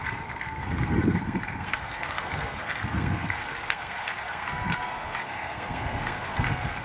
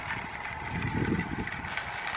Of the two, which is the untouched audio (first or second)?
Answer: second